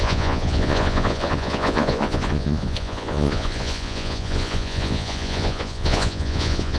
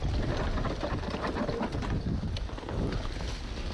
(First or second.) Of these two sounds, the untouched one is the second